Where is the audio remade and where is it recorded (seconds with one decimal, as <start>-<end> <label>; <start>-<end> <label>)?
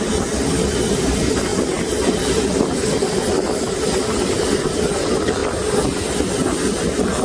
0.0-7.2 recorded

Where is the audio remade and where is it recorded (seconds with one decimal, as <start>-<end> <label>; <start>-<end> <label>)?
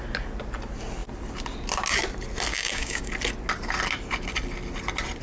0.0-2.5 recorded; 2.5-3.1 remade; 3.1-5.2 recorded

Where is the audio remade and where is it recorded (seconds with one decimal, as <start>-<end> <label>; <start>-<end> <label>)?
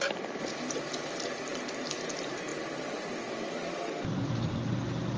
0.0-5.2 recorded